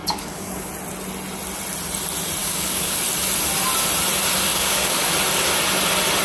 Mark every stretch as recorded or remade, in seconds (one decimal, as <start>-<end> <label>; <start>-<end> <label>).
0.0-0.7 remade; 0.7-2.4 recorded; 2.4-3.0 remade; 3.0-4.5 recorded; 4.5-5.1 remade; 5.1-6.2 recorded